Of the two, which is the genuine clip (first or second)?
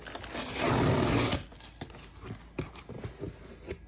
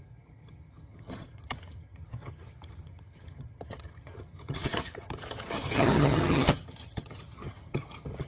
first